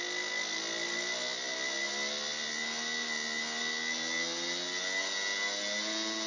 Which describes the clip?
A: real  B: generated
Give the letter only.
A